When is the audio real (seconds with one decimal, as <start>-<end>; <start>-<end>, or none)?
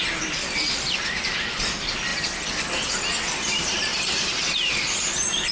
0.0-5.5